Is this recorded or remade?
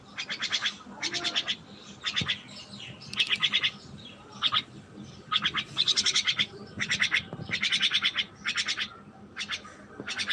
recorded